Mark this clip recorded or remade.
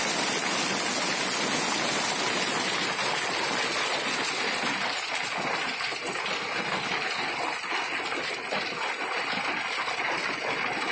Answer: recorded